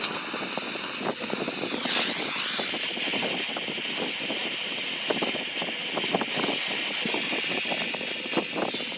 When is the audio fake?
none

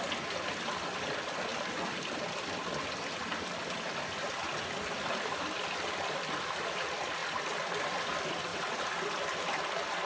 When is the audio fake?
none